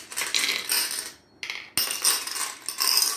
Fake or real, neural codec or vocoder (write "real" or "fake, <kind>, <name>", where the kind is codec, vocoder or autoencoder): real